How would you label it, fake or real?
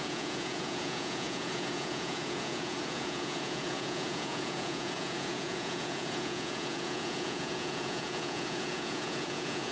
fake